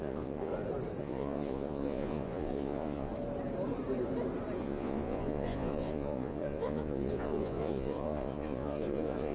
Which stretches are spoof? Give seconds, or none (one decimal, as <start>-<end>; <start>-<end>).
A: 0.0-0.5; 1.0-3.1; 4.6-9.3